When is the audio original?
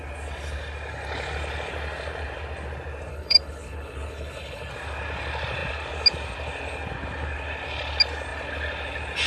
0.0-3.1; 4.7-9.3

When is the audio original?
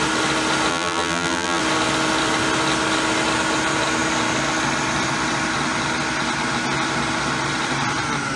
0.0-0.7; 1.6-8.4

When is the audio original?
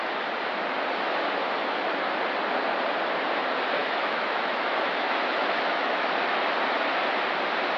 0.0-3.8; 6.1-7.8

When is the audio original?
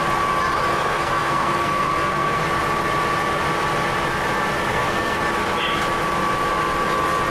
0.0-0.7; 2.4-4.7; 5.2-7.3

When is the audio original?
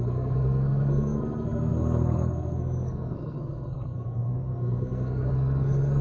none